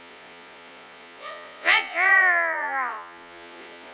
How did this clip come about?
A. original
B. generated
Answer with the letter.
B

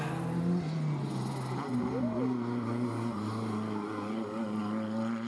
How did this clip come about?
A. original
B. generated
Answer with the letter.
A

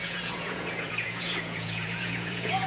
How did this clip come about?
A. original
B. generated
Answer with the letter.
B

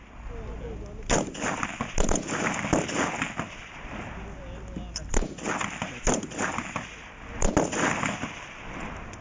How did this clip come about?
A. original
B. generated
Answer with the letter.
A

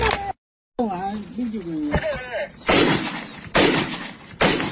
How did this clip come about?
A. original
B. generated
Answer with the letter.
A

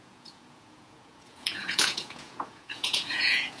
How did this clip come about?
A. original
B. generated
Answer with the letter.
B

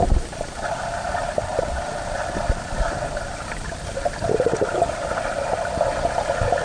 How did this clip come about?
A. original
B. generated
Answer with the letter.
A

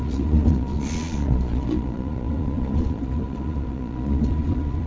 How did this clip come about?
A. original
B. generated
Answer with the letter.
B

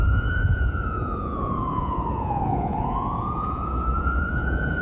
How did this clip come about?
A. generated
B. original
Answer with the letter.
A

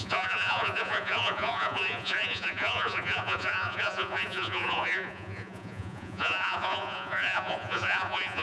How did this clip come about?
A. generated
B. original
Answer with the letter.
A